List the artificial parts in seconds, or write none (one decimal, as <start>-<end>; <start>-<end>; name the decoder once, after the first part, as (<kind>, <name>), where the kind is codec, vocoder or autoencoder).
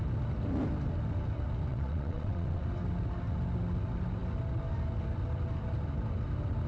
1.7-2.6 (vocoder, WaveNeXt)